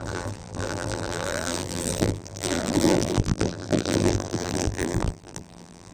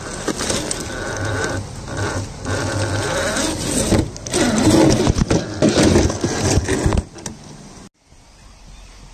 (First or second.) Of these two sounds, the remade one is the first